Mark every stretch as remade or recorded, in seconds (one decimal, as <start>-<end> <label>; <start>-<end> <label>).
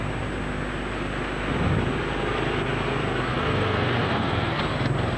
0.0-3.3 recorded; 3.3-4.6 remade; 4.6-5.2 recorded